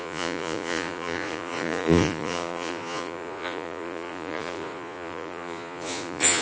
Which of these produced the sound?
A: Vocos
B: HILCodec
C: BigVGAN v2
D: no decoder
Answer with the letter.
A